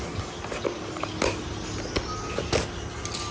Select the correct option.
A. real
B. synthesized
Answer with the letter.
A